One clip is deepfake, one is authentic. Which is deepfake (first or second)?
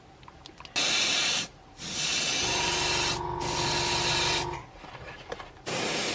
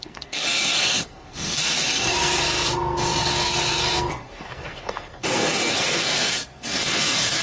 second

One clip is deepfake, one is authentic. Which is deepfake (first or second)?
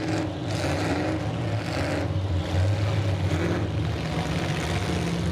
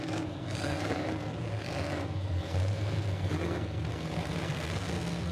second